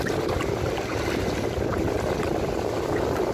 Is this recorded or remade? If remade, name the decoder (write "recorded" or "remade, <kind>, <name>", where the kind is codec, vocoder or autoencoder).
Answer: recorded